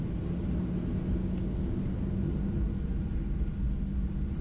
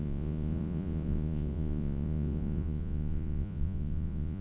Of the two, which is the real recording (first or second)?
first